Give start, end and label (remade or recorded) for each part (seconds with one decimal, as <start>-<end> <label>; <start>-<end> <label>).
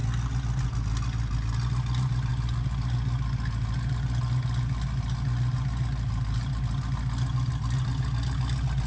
0.0-8.9 recorded